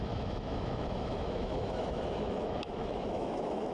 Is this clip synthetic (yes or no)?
yes